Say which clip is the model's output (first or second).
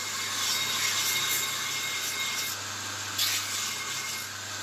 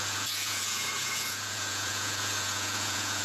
second